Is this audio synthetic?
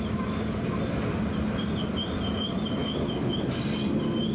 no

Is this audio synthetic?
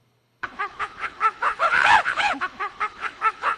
yes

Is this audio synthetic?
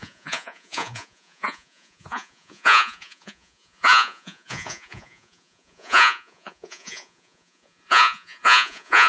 yes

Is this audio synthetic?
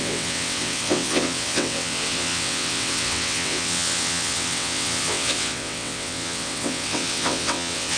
yes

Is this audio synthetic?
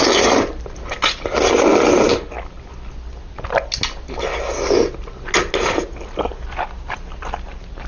no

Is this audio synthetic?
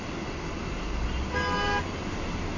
no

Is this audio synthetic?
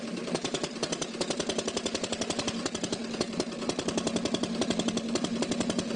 no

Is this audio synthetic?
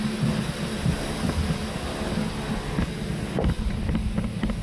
no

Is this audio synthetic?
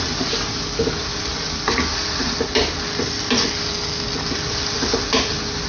no